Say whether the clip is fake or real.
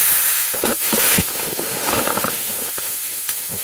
fake